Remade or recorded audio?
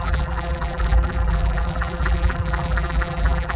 remade